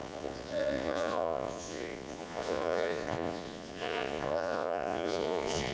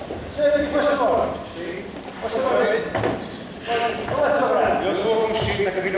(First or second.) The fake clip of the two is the first